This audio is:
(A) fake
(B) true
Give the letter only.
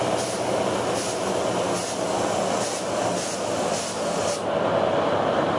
B